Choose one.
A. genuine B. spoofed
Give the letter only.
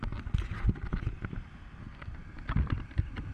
A